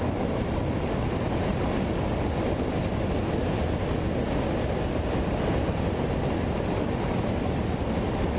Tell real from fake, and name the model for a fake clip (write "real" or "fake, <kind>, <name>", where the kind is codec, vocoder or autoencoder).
real